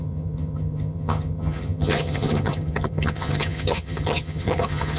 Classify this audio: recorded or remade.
remade